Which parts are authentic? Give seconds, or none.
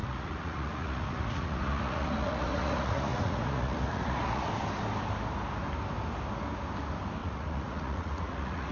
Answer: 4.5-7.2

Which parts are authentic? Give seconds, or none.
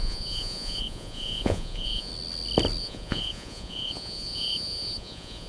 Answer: 2.1-2.8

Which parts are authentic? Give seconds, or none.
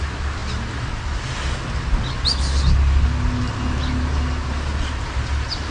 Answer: 0.0-5.7